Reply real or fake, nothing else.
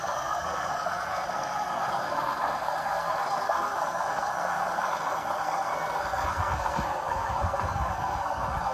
fake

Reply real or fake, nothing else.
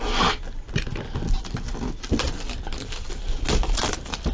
real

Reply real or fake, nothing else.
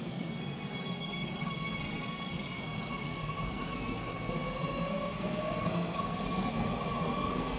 fake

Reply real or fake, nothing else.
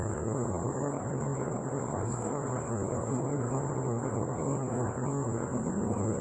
fake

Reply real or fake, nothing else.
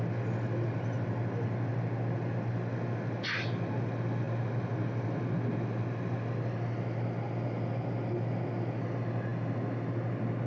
real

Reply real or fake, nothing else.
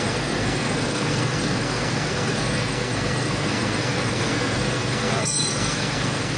fake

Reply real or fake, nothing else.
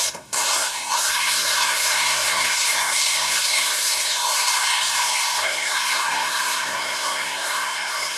fake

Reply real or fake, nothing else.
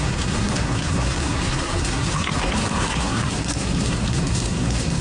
fake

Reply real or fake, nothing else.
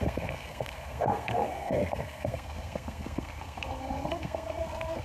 fake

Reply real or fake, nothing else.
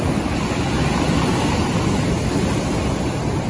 real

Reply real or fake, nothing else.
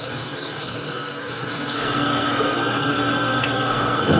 fake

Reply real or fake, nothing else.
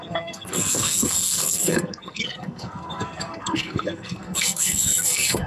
fake